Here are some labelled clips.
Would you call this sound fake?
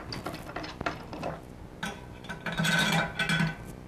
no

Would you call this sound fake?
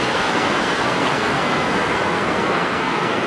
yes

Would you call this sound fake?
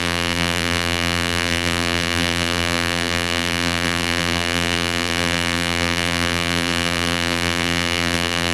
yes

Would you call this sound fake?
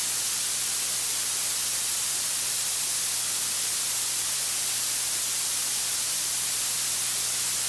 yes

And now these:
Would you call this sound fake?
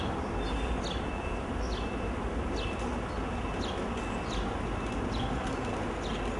no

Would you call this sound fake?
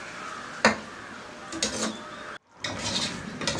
no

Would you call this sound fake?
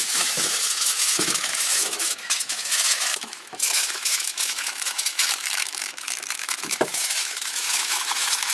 yes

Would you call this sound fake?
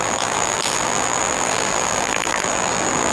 yes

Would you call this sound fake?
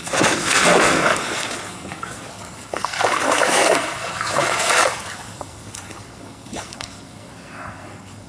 yes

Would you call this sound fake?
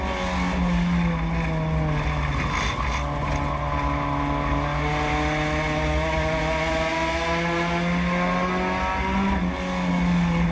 no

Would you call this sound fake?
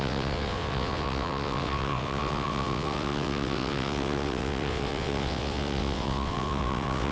yes